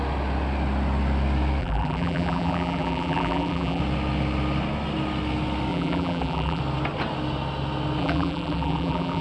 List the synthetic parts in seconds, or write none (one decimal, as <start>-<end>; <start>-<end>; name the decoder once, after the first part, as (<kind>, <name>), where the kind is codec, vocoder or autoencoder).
1.6-3.8 (vocoder, BigVGAN v2); 5.7-6.6; 8.0-9.2